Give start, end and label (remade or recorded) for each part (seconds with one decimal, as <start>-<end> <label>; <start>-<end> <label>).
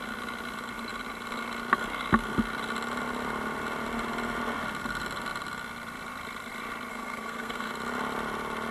0.0-6.9 recorded; 6.9-7.7 remade; 7.7-8.7 recorded